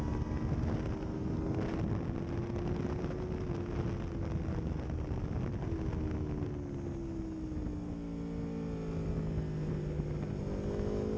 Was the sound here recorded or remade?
recorded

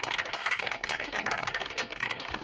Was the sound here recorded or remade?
remade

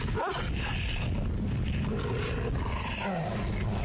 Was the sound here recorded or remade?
recorded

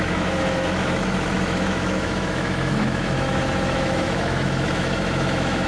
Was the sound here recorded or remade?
remade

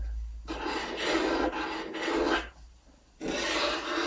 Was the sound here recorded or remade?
recorded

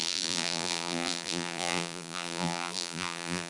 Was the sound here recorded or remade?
remade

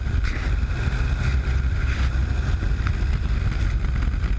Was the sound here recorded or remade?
recorded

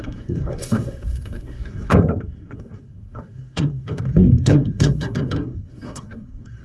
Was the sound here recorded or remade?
remade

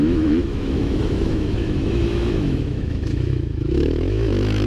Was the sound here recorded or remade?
remade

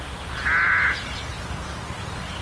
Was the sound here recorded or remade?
recorded